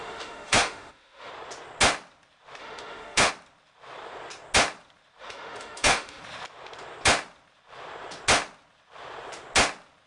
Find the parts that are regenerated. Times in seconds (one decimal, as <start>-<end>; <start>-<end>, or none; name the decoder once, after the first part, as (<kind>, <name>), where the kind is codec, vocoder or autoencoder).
0.0-1.3 (autoencoder, DAC-VAE); 2.6-3.3; 5.2-6.2